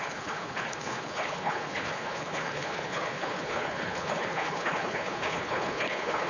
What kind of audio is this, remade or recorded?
remade